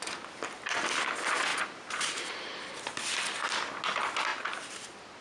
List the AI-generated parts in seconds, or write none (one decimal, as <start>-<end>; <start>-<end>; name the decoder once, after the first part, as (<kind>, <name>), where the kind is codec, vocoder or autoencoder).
1.5-3.0 (vocoder, BigVGAN v2)